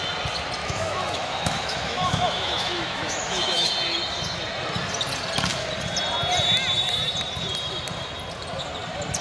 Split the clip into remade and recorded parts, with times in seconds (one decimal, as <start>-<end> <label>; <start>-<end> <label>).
0.0-0.6 recorded; 0.6-3.7 remade; 3.7-9.2 recorded